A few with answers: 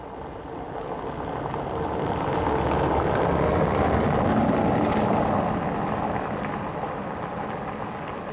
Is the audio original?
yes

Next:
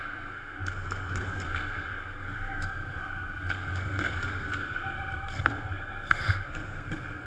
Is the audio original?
no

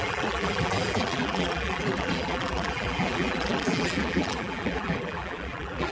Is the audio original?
no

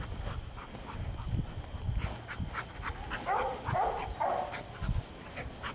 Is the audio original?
yes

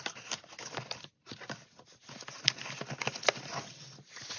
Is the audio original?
yes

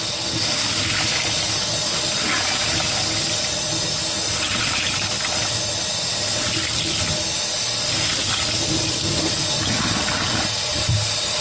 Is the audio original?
yes